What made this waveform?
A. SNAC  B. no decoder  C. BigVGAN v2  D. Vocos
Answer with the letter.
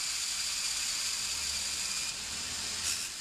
B